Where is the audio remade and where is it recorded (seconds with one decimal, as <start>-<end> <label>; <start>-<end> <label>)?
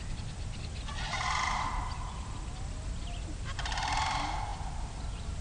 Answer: 0.0-5.4 recorded